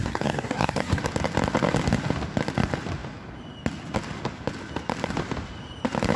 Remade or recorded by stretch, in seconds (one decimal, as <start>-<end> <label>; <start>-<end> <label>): 0.0-1.0 remade; 1.0-6.2 recorded